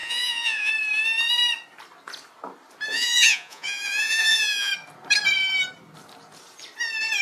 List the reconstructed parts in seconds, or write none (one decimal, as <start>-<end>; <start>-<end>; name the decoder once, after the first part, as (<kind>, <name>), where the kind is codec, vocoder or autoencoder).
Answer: 0.0-0.7 (vocoder, Vocos); 2.9-4.7